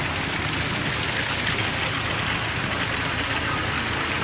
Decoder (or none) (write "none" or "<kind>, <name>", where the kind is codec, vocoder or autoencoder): none